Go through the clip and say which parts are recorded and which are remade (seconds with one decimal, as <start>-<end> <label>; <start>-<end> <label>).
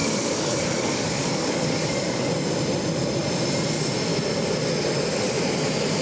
0.0-2.3 remade; 2.3-6.0 recorded